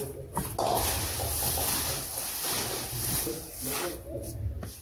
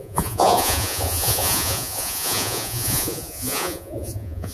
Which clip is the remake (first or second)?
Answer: second